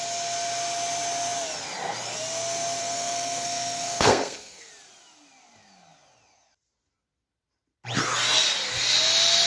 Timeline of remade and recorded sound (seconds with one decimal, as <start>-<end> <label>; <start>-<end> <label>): 0.0-2.8 recorded; 2.8-4.7 remade; 4.7-9.5 recorded